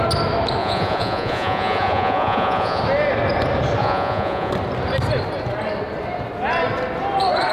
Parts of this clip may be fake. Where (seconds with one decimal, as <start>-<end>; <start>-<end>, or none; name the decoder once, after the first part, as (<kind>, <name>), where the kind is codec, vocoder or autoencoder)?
0.6-2.8 (vocoder, Vocos); 3.8-4.5

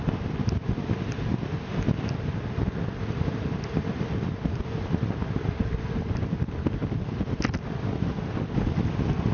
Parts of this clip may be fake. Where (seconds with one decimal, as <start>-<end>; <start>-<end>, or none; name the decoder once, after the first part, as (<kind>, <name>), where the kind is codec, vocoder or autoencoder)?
none

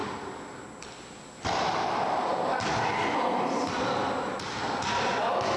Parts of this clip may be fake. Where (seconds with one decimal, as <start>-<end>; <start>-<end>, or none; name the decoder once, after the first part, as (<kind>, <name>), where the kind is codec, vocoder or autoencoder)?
none

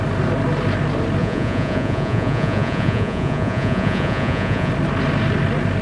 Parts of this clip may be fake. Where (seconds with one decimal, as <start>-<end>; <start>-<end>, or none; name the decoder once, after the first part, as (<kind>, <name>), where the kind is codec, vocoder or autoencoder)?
1.2-4.7 (vocoder, Vocos)

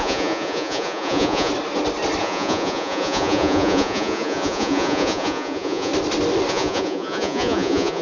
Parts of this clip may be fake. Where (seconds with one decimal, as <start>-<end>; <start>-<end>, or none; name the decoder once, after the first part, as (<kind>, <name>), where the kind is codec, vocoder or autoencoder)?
0.0-1.5 (vocoder, Vocos); 2.2-5.9; 6.5-8.0

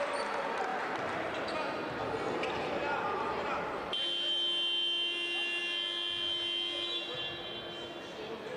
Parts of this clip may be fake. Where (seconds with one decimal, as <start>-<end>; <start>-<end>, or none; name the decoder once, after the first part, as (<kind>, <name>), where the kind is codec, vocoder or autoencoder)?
none

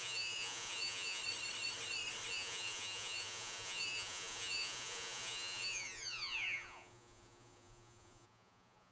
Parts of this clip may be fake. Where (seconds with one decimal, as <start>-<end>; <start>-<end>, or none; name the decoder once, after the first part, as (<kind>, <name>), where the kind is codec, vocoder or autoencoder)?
0.0-1.2 (vocoder, Vocos); 2.3-8.9